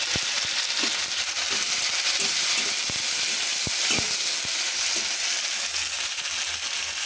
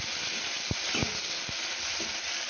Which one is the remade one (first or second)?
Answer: second